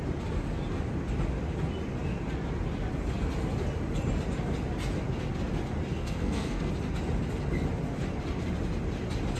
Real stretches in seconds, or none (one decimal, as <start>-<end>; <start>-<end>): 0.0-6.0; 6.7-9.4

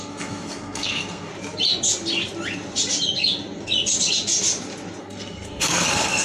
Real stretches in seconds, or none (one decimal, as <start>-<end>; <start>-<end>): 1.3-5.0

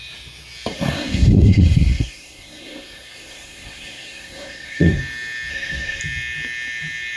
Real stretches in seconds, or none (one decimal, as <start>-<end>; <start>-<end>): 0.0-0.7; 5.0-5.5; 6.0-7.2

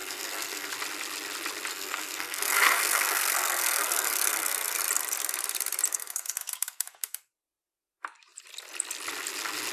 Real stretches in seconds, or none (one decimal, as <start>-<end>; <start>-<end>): 0.7-1.7; 4.8-5.9; 7.3-9.7

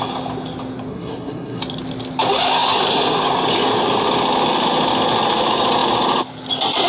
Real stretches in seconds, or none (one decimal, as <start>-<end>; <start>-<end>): 0.0-0.9; 1.6-6.9

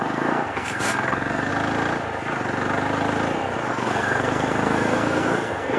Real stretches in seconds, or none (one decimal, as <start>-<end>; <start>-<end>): 1.5-3.7

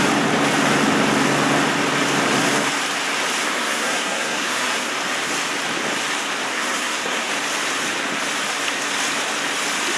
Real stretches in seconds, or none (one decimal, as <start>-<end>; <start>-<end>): 0.0-3.4; 4.9-6.5; 7.3-10.0

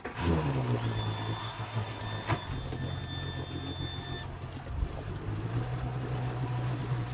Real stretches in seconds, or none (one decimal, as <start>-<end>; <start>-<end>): 0.0-1.4; 2.0-7.1